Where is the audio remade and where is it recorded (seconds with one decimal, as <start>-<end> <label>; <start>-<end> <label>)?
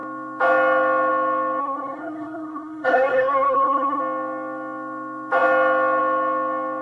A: 0.0-1.6 recorded; 1.6-4.0 remade; 4.0-6.8 recorded